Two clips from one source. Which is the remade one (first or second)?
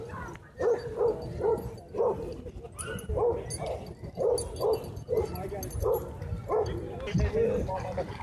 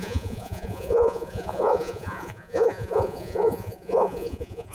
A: second